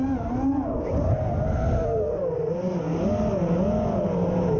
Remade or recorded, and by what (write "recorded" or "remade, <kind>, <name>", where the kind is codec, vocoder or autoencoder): recorded